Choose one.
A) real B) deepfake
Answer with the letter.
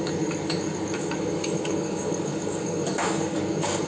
B